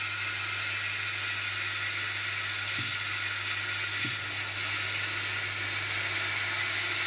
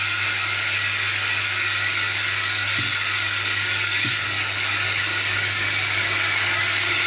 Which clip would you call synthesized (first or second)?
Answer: second